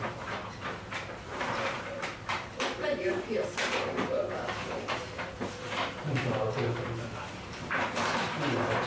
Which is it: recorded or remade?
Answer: remade